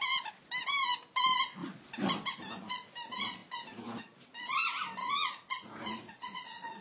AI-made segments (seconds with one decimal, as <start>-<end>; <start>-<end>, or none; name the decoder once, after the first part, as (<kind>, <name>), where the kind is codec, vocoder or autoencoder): 5.0-6.8 (vocoder, Vocos)